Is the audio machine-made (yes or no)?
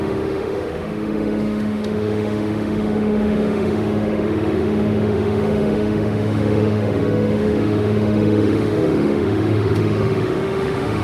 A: yes